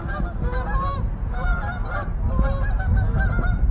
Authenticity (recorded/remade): recorded